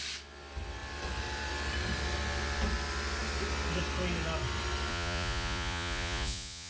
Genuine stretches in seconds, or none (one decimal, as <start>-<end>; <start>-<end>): 0.0-4.9